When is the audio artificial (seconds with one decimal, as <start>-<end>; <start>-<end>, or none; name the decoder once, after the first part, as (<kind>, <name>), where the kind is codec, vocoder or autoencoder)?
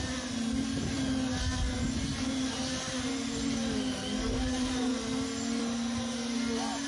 none